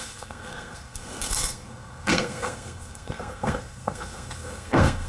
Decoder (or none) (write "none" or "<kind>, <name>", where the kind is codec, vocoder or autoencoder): codec, SNAC